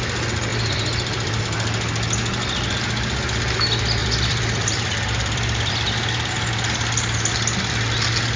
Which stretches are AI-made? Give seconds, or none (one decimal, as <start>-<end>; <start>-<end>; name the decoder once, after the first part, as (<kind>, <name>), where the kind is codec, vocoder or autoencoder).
0.5-1.4 (vocoder, BigVGAN v2); 4.0-5.7